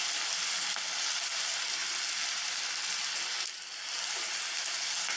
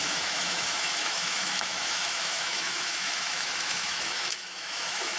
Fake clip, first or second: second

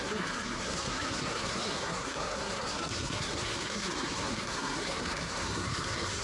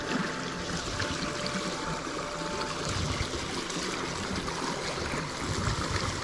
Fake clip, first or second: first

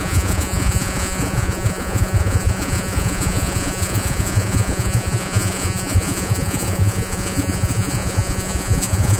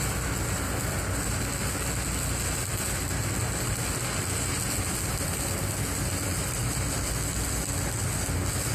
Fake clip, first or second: first